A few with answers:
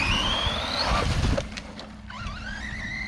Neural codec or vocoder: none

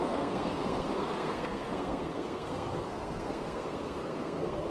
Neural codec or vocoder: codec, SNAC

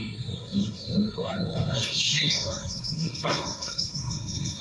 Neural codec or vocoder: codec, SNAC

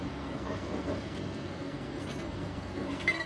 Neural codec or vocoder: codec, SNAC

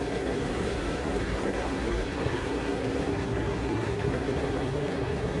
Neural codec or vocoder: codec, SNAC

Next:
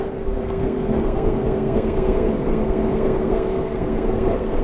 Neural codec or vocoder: codec, SNAC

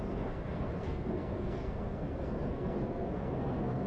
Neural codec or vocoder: codec, SNAC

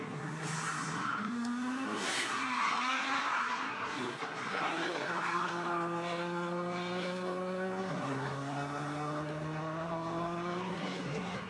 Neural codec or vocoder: codec, SNAC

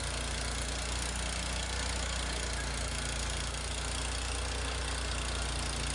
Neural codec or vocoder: none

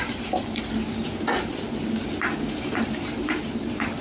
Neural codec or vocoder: none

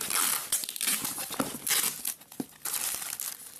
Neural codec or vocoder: none